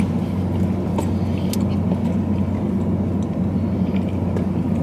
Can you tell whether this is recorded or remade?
recorded